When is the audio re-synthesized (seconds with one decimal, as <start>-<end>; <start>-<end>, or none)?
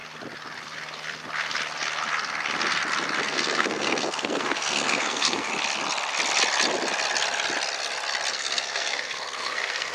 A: 3.2-5.5; 8.3-9.9